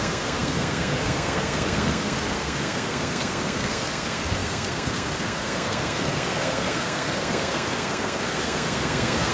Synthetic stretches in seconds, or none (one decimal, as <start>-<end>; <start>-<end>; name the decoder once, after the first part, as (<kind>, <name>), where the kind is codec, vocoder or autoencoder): 0.0-9.3 (codec, SNAC)